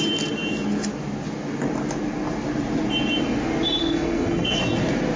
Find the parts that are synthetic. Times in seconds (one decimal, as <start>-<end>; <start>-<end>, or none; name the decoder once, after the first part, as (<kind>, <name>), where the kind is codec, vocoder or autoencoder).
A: 3.8-4.6 (codec, SNAC)